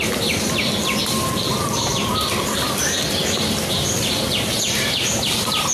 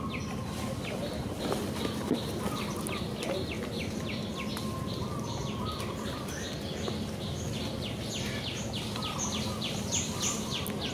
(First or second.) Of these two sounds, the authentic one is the second